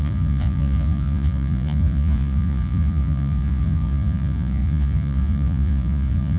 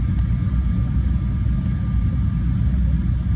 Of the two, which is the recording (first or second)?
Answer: second